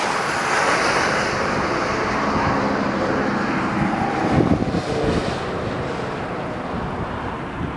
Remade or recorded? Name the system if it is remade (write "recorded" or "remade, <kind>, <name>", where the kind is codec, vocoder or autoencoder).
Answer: recorded